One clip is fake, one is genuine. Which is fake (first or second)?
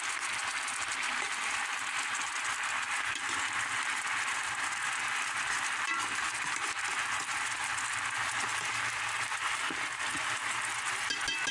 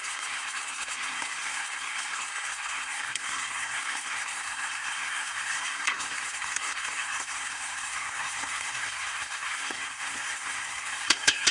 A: second